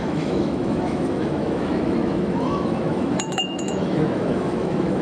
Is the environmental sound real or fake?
fake